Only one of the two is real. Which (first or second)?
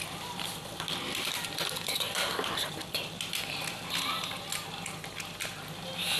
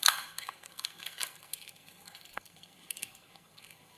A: first